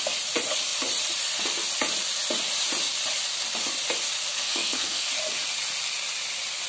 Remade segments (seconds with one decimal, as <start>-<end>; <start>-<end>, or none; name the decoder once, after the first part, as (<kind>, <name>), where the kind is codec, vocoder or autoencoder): 4.3-5.1 (codec, SNAC)